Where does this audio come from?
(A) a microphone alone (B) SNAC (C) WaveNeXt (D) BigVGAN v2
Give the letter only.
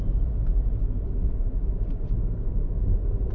D